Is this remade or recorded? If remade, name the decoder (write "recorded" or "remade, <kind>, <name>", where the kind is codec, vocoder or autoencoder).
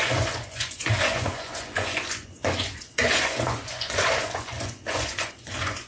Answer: remade, vocoder, Vocos